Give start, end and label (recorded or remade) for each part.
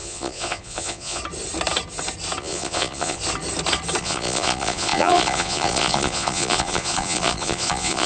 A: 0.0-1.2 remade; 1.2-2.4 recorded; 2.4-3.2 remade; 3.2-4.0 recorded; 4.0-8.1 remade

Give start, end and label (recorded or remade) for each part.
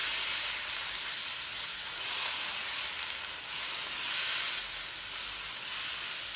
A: 0.0-1.7 recorded; 1.7-2.8 remade; 2.8-6.4 recorded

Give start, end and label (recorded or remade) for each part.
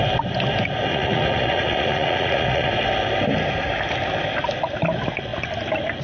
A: 0.0-0.9 recorded; 0.9-2.7 remade; 2.7-6.0 recorded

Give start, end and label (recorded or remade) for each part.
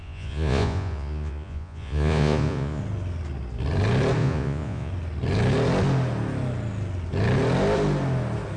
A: 0.0-2.8 remade; 2.8-4.2 recorded; 4.2-4.9 remade; 4.9-8.6 recorded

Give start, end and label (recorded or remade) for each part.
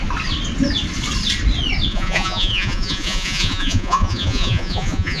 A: 0.0-1.9 recorded; 1.9-5.2 remade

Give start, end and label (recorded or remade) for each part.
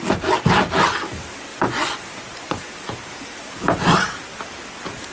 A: 0.0-1.5 recorded; 1.5-2.7 remade; 2.7-5.1 recorded